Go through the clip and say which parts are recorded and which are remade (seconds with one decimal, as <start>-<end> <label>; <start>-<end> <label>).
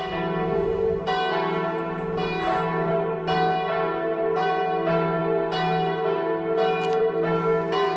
0.0-8.0 recorded